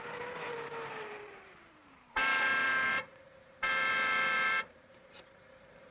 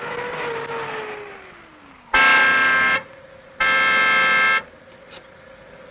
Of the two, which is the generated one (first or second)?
first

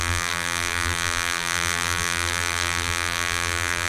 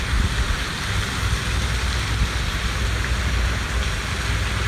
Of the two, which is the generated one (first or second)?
first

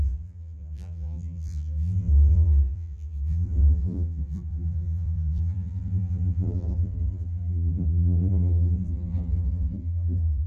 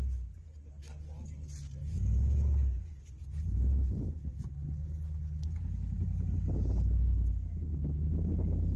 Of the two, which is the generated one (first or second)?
first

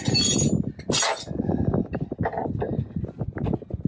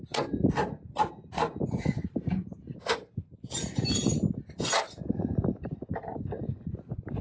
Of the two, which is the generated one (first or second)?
second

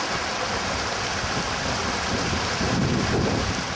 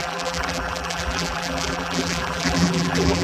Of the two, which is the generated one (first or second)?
second